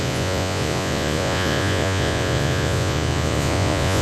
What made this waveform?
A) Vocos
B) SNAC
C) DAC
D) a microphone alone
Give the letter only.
A